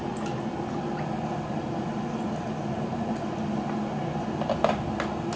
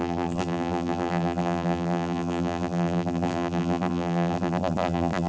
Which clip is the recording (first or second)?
first